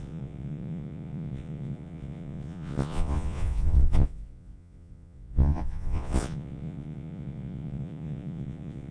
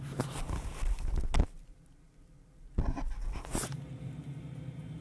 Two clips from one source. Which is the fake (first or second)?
first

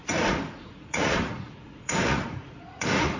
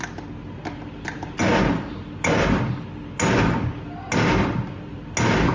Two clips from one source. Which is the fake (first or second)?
first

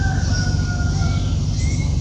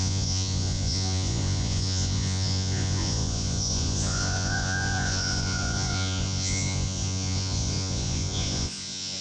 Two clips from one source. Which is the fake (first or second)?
second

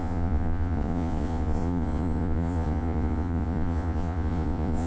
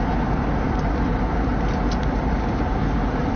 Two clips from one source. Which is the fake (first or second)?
first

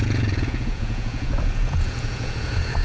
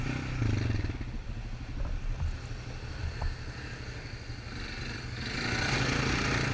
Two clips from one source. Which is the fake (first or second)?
first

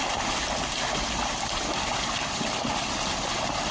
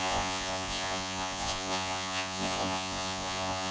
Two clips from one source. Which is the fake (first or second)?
second